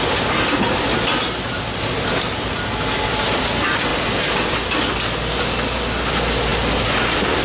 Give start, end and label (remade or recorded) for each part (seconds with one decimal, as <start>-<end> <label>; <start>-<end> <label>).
0.0-6.5 recorded; 6.5-7.4 remade